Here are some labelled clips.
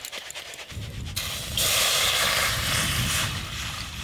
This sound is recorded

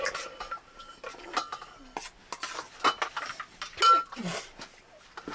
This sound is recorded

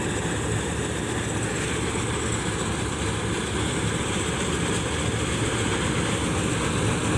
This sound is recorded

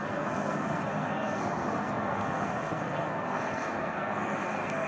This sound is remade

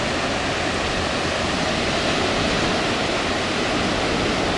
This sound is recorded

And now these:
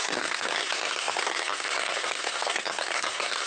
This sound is remade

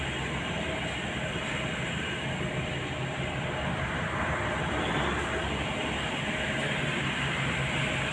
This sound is recorded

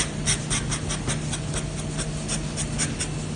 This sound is recorded